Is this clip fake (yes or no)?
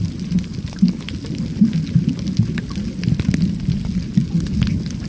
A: no